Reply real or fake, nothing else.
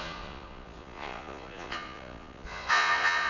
fake